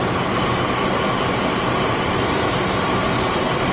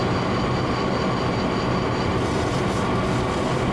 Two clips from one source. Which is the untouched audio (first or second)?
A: second